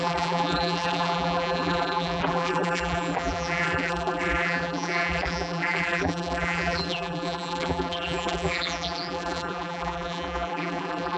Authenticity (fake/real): fake